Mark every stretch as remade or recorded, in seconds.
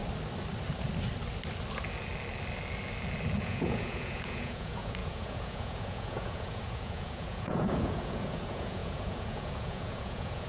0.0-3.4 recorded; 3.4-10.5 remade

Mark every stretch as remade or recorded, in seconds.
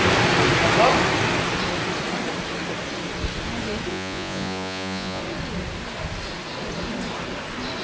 0.0-3.9 recorded; 3.9-5.2 remade; 5.2-7.8 recorded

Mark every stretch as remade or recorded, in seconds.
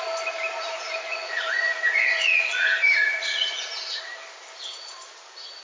0.0-0.6 recorded; 0.6-4.0 remade; 4.0-5.6 recorded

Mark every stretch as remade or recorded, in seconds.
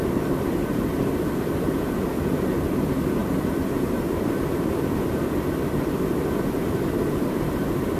0.0-8.0 recorded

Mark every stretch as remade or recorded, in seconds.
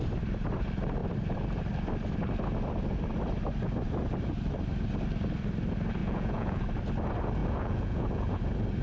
0.0-6.0 recorded; 6.0-6.6 remade; 6.6-7.4 recorded; 7.4-8.4 remade; 8.4-8.8 recorded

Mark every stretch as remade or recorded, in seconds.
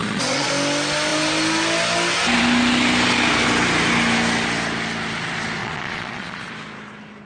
0.0-0.5 remade; 0.5-5.6 recorded; 5.6-6.5 remade; 6.5-7.3 recorded